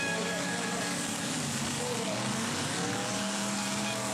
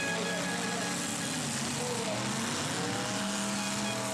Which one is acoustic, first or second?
second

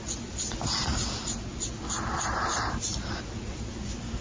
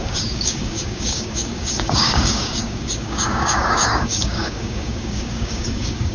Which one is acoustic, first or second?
first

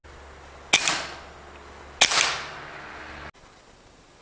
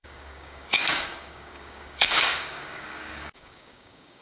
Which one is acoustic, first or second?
first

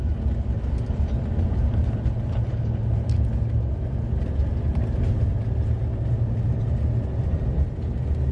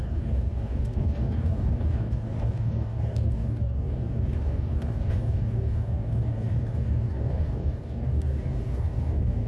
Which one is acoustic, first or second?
first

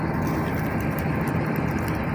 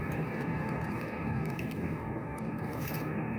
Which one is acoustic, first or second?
first